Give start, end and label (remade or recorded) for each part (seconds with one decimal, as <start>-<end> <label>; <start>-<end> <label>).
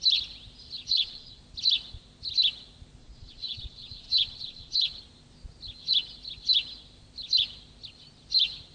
0.0-0.9 recorded; 0.9-1.4 remade; 1.4-3.0 recorded; 3.0-5.0 remade; 5.0-8.7 recorded